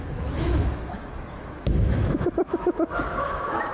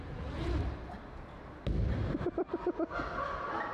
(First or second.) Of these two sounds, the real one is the second